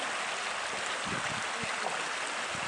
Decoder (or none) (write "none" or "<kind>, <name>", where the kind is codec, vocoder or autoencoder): none